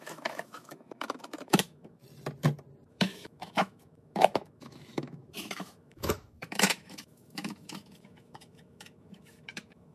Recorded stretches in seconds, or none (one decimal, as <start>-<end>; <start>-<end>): 2.0-2.9